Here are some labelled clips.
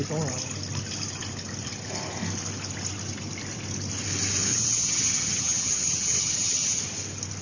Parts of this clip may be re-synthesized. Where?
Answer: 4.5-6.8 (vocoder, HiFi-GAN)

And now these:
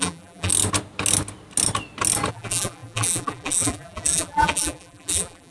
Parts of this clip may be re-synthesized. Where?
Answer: 0.0-0.5 (vocoder, BigVGAN v2); 2.3-5.5

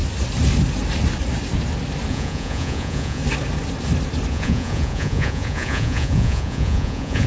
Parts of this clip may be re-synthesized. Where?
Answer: 2.1-3.2 (vocoder, Vocos); 4.3-7.3

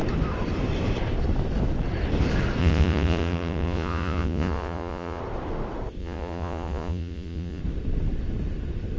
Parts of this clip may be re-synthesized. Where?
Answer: 2.6-5.2 (vocoder, Vocos); 6.0-7.6